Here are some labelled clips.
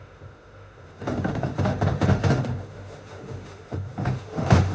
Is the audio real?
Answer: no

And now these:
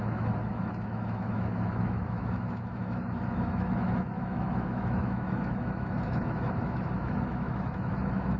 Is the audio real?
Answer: no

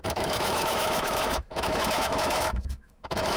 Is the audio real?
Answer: no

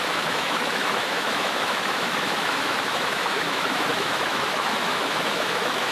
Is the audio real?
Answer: no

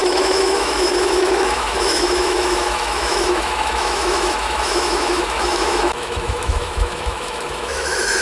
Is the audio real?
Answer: no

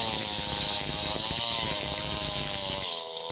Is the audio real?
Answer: no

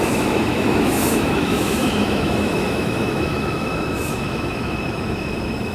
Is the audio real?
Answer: no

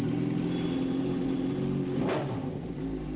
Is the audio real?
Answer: yes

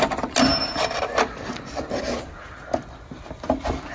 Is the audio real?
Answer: yes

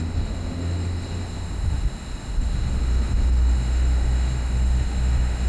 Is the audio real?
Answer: no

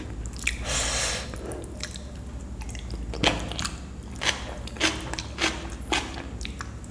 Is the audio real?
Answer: yes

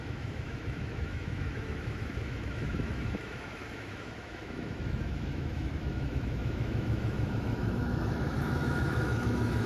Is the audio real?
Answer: no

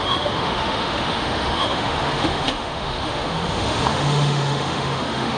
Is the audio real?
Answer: no